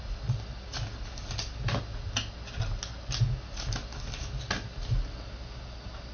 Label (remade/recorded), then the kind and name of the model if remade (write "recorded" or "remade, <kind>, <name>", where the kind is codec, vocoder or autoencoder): recorded